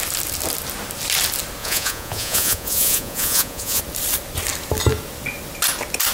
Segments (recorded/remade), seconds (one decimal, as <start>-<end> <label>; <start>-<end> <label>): 0.0-1.6 recorded; 1.6-3.8 remade; 3.8-6.1 recorded